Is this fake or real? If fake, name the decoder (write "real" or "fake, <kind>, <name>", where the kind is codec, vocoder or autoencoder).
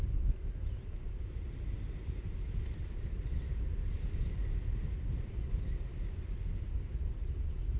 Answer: real